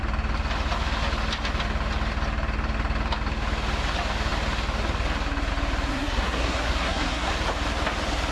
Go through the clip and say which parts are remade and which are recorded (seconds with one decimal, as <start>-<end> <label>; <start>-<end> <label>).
0.0-5.9 recorded; 5.9-7.3 remade; 7.3-8.3 recorded